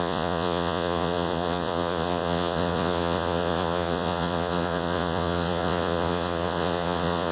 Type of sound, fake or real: fake